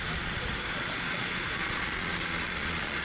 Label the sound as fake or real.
fake